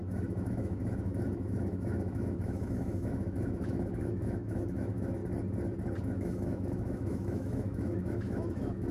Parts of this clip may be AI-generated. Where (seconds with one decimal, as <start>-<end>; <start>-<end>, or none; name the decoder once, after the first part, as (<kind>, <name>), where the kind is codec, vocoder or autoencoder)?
0.0-5.2 (autoencoder, DAC-VAE); 6.0-8.9

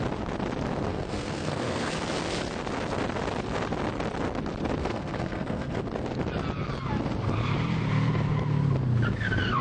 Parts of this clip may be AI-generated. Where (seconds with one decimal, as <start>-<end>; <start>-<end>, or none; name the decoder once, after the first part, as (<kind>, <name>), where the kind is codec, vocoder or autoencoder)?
0.9-1.9 (codec, SNAC); 4.8-5.8

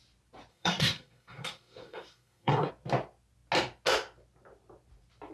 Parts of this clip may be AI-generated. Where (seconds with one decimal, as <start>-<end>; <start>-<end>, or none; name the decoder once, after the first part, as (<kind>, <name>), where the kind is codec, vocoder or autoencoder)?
0.5-2.7 (codec, SNAC)

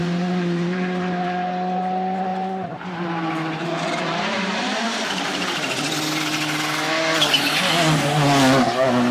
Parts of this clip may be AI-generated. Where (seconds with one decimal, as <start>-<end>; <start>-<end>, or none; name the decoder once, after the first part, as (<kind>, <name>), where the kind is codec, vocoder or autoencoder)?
0.0-1.2 (vocoder, BigVGAN v2); 2.3-5.5